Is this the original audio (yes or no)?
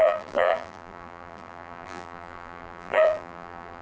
no